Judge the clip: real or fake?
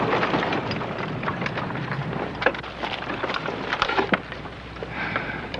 fake